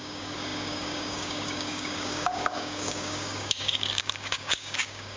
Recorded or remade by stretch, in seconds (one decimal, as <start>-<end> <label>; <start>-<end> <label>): 0.0-5.2 remade